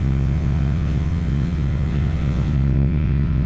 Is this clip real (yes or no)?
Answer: no